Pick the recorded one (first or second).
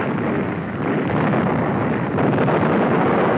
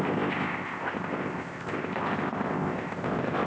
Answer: first